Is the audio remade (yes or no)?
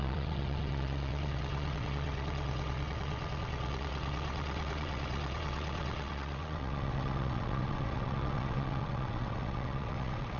yes